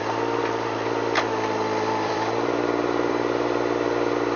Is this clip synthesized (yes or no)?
yes